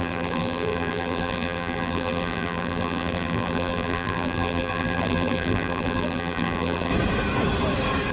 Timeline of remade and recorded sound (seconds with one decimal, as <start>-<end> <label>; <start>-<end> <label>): 0.0-6.9 remade; 6.9-8.1 recorded

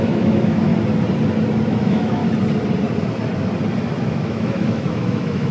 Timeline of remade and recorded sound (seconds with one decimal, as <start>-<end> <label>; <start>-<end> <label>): 0.0-0.7 remade; 0.7-1.7 recorded; 1.7-2.2 remade; 2.2-4.0 recorded; 4.0-5.5 remade

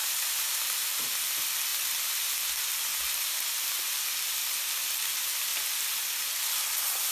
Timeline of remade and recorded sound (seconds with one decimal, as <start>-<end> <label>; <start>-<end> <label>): 0.0-1.1 remade; 1.1-2.9 recorded; 2.9-4.0 remade; 4.0-7.1 recorded

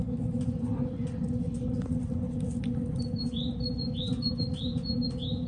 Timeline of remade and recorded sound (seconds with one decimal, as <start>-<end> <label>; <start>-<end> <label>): 0.0-5.5 recorded

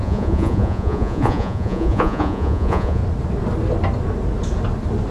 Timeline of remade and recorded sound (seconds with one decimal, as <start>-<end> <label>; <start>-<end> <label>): 0.0-3.0 remade; 3.0-5.1 recorded

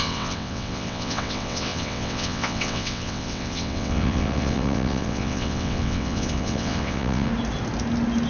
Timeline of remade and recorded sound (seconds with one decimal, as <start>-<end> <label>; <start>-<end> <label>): 0.0-7.3 remade; 7.3-8.3 recorded